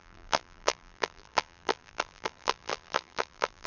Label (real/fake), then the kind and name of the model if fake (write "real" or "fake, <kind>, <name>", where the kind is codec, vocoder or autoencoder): fake, vocoder, BigVGAN v2